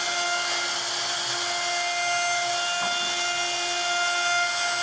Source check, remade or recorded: recorded